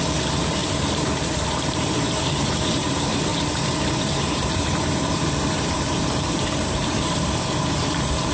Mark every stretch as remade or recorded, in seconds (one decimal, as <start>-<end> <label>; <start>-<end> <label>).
0.0-3.3 remade; 3.3-4.0 recorded; 4.0-8.3 remade